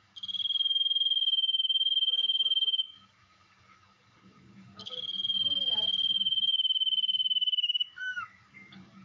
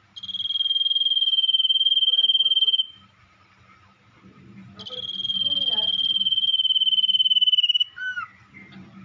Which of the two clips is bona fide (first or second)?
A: second